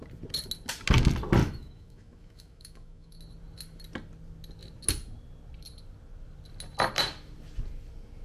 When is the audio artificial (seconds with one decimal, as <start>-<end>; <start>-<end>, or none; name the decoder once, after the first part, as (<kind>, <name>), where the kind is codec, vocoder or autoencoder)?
1.4-3.2 (autoencoder, DAC-VAE)